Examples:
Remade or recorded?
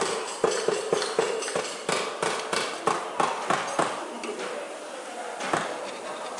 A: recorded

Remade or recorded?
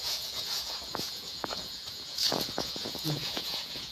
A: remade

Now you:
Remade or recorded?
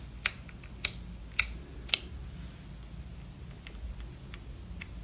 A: recorded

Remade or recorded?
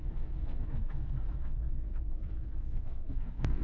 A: remade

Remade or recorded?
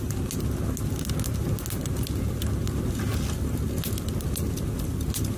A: recorded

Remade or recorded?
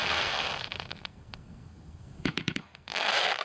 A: remade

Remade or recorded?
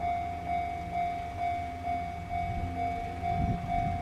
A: recorded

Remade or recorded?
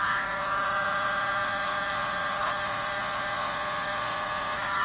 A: remade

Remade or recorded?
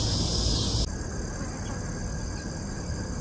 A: recorded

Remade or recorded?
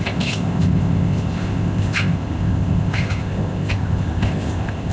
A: remade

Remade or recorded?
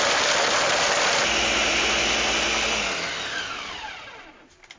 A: recorded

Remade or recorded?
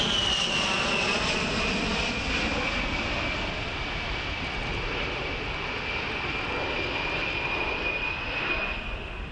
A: recorded